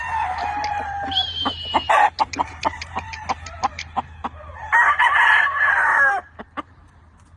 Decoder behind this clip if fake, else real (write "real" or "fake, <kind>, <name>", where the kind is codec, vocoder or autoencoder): fake, vocoder, BigVGAN v2